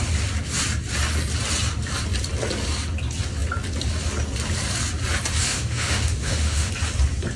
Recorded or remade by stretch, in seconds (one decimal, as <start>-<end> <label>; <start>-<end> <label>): 0.0-5.5 recorded; 5.5-6.7 remade; 6.7-7.4 recorded